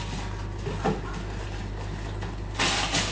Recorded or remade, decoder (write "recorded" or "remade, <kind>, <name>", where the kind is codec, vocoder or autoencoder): recorded